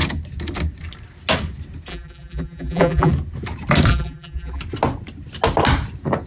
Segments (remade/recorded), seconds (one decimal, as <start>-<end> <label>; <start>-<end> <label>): 0.0-1.9 recorded; 1.9-3.1 remade; 3.1-3.9 recorded; 3.9-4.6 remade; 4.6-6.3 recorded